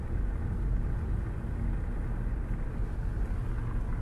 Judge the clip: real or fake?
real